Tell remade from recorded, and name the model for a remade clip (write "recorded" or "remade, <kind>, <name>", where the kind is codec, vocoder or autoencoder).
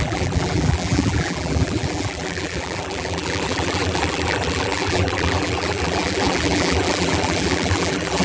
remade, vocoder, BigVGAN v2